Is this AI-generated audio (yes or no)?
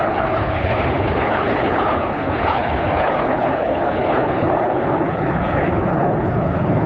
yes